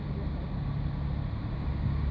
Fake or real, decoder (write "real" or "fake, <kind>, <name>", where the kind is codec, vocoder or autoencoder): real